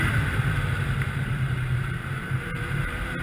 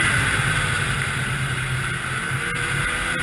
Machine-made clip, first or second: first